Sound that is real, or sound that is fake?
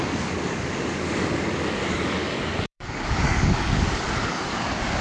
fake